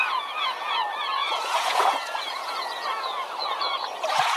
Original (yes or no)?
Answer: no